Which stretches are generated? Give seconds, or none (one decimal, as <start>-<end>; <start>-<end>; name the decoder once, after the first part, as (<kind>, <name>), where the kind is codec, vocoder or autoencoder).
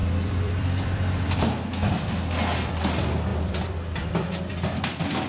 0.0-2.1 (vocoder, BigVGAN v2); 3.3-4.5